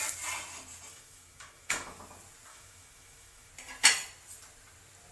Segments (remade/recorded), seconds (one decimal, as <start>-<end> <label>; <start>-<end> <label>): 0.0-0.9 recorded; 0.9-2.0 remade; 2.0-2.5 recorded; 2.5-3.5 remade; 3.5-5.1 recorded